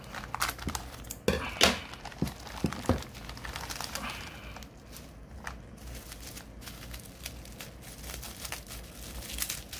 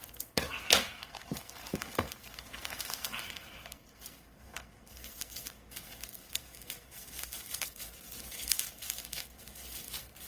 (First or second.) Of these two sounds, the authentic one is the first